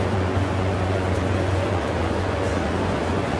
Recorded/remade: remade